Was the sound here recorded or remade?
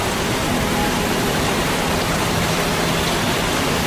remade